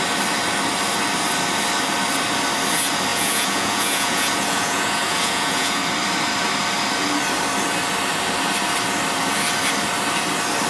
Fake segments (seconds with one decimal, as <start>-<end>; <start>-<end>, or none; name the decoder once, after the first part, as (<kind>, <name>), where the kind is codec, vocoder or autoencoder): 3.1-5.8 (vocoder, Vocos)